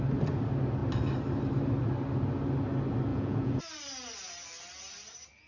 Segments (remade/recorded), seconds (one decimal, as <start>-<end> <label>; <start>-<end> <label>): 0.0-3.1 recorded; 3.1-3.6 remade; 3.6-5.5 recorded